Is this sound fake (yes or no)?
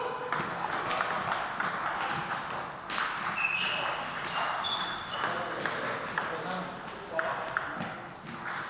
no